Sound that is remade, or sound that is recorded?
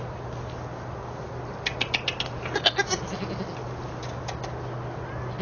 recorded